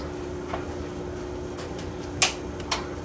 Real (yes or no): yes